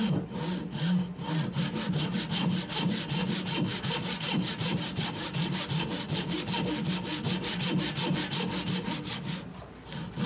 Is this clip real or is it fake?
real